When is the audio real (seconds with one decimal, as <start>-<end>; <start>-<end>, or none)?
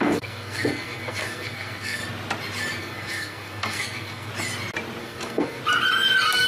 2.0-2.8; 4.3-5.0; 5.6-6.5